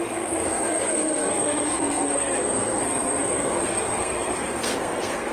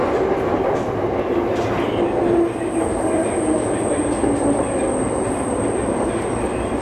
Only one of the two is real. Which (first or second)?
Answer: second